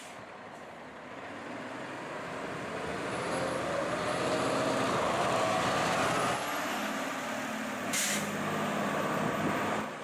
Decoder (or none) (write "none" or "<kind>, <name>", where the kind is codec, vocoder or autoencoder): none